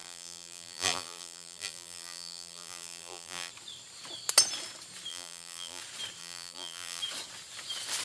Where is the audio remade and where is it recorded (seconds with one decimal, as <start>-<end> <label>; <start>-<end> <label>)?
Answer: 0.0-3.5 remade; 3.5-5.1 recorded; 5.1-5.8 remade; 5.8-6.2 recorded; 6.2-7.0 remade; 7.0-8.0 recorded

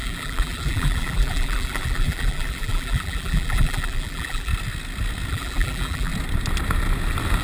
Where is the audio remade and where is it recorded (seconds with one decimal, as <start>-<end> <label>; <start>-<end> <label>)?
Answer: 0.0-4.5 remade; 4.5-5.3 recorded; 5.3-6.1 remade; 6.1-7.4 recorded

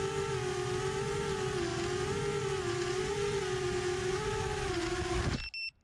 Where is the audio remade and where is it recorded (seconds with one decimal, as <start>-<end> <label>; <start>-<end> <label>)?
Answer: 0.0-5.8 recorded

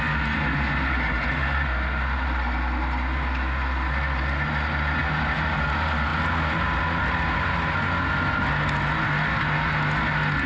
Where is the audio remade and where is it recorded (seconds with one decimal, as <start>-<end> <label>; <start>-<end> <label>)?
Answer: 0.0-10.5 recorded

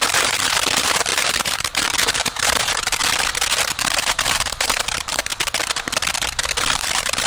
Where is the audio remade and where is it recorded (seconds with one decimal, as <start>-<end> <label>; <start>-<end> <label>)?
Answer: 0.0-3.0 remade; 3.0-3.8 recorded; 3.8-5.3 remade; 5.3-6.6 recorded; 6.6-7.3 remade

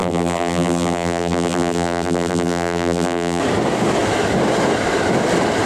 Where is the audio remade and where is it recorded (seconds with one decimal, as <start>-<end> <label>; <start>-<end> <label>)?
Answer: 0.0-3.4 remade; 3.4-5.7 recorded

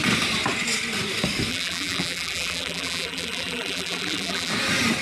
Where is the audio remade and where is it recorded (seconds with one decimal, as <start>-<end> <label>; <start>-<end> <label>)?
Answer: 0.0-1.5 recorded; 1.5-4.5 remade; 4.5-5.0 recorded